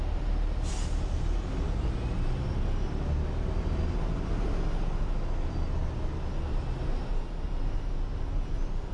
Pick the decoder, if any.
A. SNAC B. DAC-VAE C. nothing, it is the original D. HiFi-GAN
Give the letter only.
C